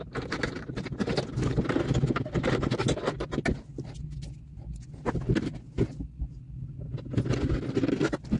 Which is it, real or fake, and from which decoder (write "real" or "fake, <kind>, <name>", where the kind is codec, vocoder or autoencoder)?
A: real